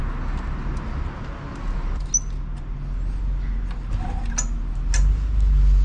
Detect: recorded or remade recorded